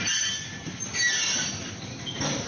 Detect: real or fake real